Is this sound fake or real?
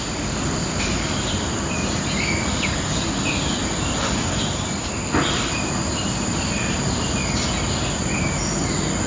real